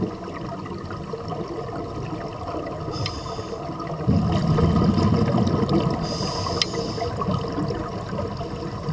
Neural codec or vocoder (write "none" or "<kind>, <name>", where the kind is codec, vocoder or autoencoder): none